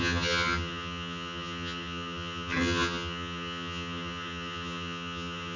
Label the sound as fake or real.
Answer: fake